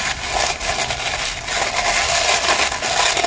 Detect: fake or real real